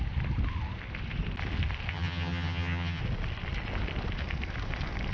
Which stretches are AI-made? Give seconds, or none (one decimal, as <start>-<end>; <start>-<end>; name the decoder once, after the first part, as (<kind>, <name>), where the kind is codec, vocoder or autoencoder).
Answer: 1.9-3.0 (vocoder, HiFi-GAN)